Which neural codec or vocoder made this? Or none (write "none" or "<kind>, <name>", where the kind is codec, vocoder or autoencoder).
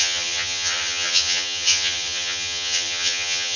vocoder, HiFi-GAN